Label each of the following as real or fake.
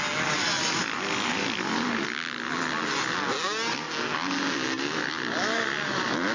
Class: real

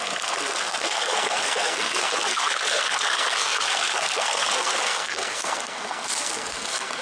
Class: fake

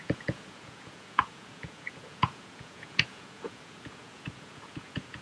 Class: fake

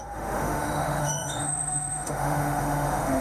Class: fake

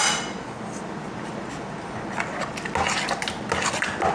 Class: real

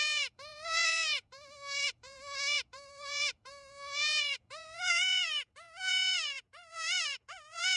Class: fake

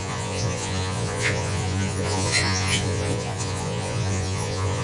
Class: fake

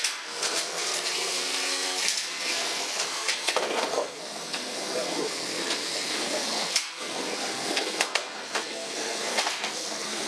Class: fake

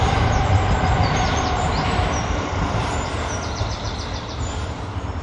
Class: fake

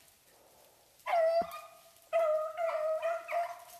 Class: real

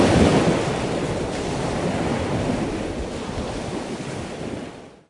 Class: real